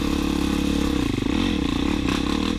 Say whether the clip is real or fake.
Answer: real